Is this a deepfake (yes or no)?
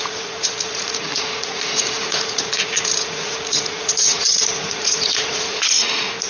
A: yes